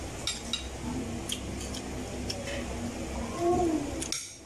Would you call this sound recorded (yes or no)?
yes